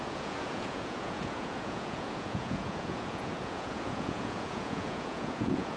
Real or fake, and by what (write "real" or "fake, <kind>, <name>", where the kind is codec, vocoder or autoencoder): fake, vocoder, Vocos